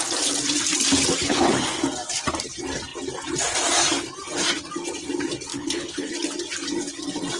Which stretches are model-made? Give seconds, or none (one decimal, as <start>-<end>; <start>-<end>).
1.2-1.8; 5.5-6.1